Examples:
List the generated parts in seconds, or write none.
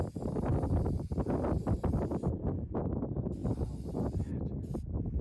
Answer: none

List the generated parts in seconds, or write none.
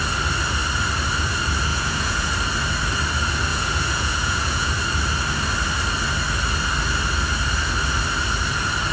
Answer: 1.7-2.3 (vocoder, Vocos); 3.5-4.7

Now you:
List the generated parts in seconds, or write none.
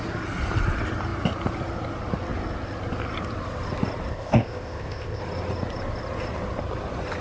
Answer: 4.1-5.2 (codec, ZipCodec)